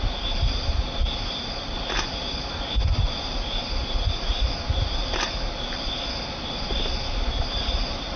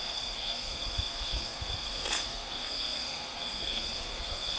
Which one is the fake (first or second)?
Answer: second